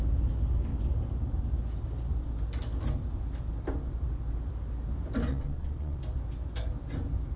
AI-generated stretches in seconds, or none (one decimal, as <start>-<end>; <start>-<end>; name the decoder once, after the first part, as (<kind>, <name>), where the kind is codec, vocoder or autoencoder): 5.3-6.0 (vocoder, WaveNeXt)